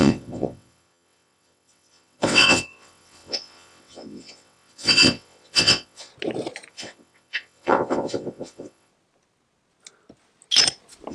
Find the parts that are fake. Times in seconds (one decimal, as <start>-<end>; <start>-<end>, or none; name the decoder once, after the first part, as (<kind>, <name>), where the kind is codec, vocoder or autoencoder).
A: 0.0-6.1 (vocoder, WaveNeXt); 6.7-8.9

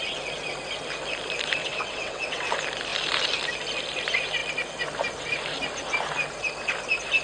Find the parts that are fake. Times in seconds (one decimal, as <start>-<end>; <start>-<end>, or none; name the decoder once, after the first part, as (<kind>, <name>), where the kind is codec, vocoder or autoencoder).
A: 1.6-2.5 (vocoder, WaveNeXt)

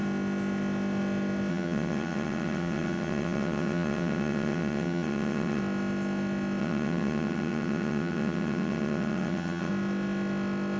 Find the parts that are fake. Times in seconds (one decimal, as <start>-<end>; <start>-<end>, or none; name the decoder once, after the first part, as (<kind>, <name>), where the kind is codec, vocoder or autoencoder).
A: 1.5-5.6 (vocoder, WaveNeXt); 6.6-9.7

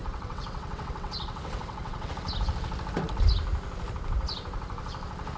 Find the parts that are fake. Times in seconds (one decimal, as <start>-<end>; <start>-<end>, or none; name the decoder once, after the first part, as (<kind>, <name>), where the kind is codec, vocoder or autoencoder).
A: 0.0-2.1 (vocoder, WaveNeXt)

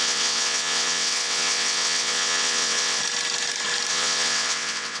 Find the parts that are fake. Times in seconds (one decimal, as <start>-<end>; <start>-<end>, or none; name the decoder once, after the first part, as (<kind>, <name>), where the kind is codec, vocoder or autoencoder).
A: 0.0-3.0 (vocoder, WaveNeXt); 3.9-5.0

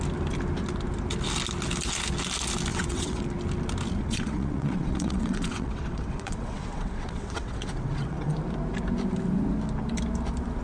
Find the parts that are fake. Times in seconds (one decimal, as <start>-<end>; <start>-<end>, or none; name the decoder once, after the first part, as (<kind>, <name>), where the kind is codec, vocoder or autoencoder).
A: 2.7-3.2 (vocoder, WaveNeXt); 4.0-8.3